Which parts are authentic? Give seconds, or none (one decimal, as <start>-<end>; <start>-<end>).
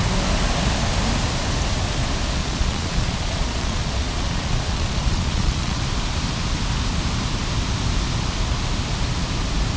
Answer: 0.0-2.4; 5.8-9.8